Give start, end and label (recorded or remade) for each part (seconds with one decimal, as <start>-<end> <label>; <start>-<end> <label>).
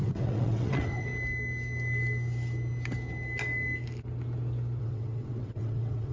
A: 0.0-1.1 remade; 1.1-4.8 recorded; 4.8-6.1 remade